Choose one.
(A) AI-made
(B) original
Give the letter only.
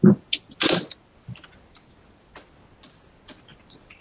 B